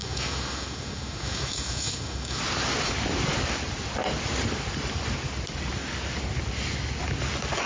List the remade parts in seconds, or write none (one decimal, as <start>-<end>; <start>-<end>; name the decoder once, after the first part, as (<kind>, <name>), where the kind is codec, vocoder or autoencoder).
0.0-2.4 (autoencoder, DAC-VAE)